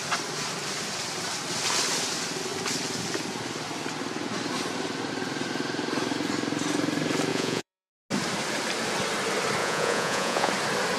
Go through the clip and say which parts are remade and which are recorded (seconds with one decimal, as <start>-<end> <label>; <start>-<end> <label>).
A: 0.0-7.3 recorded; 7.3-7.9 remade; 7.9-9.6 recorded; 9.6-10.5 remade; 10.5-11.0 recorded